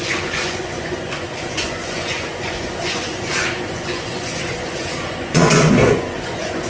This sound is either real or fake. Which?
fake